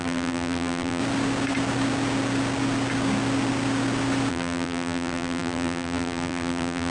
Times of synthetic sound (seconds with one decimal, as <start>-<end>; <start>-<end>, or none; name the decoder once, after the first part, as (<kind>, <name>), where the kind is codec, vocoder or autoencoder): 0.0-1.0 (vocoder, BigVGAN v2); 4.3-6.9

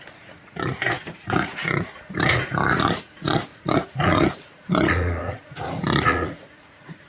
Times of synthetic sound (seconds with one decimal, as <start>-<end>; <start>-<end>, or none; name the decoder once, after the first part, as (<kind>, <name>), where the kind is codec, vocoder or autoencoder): 0.0-7.1 (vocoder, Vocos)

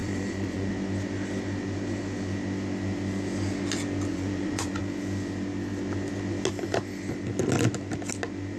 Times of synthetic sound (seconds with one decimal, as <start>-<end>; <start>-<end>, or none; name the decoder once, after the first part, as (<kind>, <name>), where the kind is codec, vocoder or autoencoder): 0.0-0.7 (vocoder, Vocos); 4.1-4.8